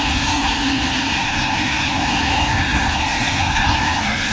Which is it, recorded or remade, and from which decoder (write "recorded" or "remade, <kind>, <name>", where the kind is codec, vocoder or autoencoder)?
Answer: remade, codec, SNAC